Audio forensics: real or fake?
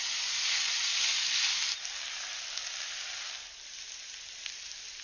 real